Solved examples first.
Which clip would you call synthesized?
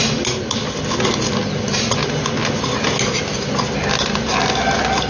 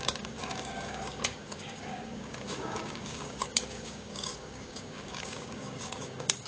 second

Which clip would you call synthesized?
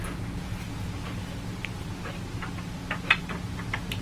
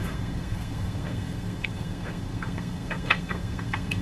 second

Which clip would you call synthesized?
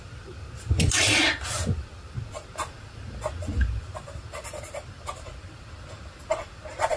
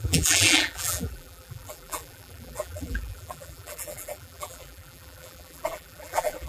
second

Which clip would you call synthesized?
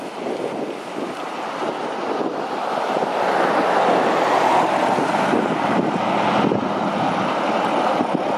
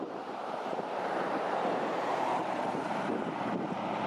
second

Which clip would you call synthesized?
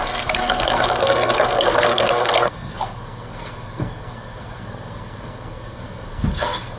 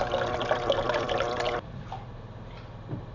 first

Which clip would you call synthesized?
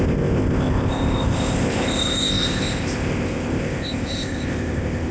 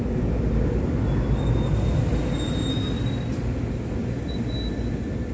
first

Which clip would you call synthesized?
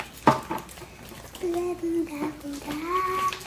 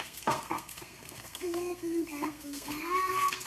second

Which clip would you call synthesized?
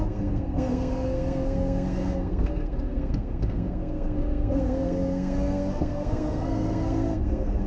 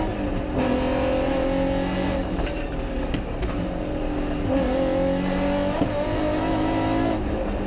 first